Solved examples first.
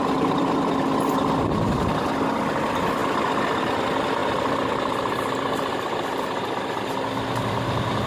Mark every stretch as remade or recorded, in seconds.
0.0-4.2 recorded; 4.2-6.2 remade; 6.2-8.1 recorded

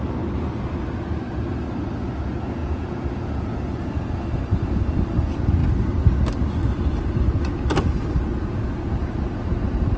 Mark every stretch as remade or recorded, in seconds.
0.0-2.6 recorded; 2.6-4.1 remade; 4.1-10.0 recorded

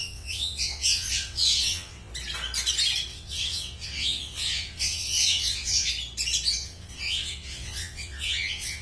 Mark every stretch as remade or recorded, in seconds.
0.0-2.1 remade; 2.1-3.1 recorded; 3.1-5.9 remade; 5.9-6.6 recorded; 6.6-8.8 remade

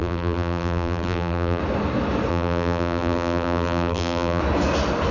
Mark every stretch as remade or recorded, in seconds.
0.0-1.6 remade; 1.6-2.3 recorded; 2.3-4.4 remade; 4.4-5.1 recorded

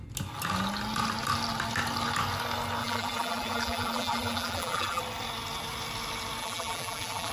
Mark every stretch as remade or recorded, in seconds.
0.0-2.8 recorded; 2.8-5.0 remade; 5.0-6.4 recorded; 6.4-7.3 remade